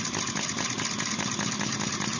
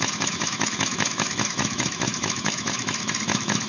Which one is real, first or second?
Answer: first